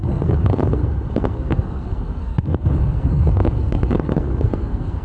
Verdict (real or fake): fake